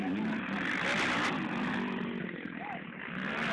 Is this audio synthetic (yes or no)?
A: no